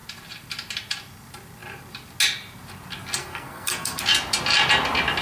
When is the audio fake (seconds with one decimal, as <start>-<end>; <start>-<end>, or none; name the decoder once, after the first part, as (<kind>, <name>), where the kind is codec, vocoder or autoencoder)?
3.2-4.0 (codec, SNAC)